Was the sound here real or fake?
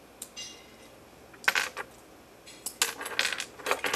real